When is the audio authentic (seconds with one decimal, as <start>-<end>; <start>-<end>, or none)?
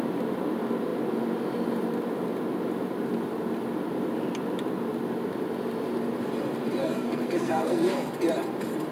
0.0-6.8; 8.1-8.9